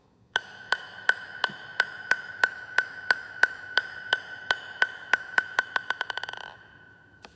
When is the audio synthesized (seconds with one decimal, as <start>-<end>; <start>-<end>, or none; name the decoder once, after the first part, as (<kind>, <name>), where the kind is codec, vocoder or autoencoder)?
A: 0.0-7.4 (autoencoder, DAC-VAE)